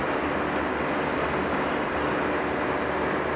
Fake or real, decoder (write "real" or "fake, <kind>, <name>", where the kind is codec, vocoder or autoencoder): real